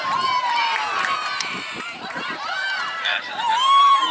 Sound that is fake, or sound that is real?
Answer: fake